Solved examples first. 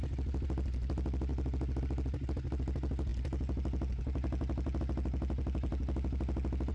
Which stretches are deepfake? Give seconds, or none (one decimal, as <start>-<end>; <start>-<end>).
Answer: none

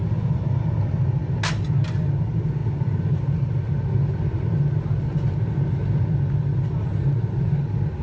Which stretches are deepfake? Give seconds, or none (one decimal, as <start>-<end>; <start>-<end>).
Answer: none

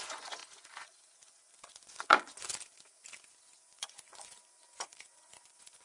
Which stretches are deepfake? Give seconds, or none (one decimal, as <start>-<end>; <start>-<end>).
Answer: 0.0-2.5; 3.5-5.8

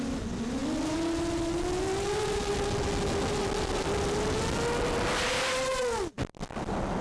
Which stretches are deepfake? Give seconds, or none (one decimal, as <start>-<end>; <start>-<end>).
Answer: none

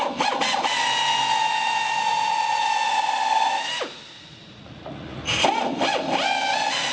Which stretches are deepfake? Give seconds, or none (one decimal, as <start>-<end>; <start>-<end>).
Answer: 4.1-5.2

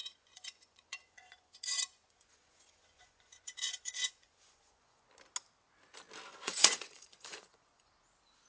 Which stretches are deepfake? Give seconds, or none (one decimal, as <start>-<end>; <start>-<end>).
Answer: 0.0-5.1; 6.3-7.9

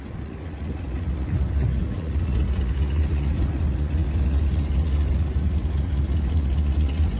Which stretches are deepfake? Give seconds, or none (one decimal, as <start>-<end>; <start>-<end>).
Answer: 0.0-7.2